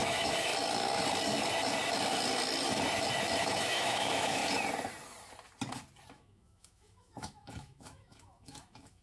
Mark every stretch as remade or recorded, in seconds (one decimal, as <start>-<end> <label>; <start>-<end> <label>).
0.0-0.5 remade; 0.5-3.4 recorded; 3.4-4.4 remade; 4.4-6.1 recorded; 6.1-9.0 remade